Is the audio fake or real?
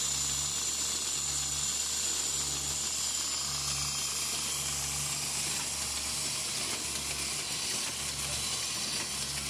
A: real